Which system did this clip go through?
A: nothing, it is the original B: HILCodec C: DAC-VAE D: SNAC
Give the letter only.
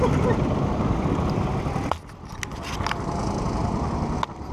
A